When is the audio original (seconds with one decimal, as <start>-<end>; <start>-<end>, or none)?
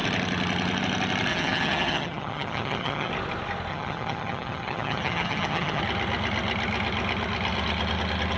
0.0-1.3; 3.1-3.7; 5.8-8.4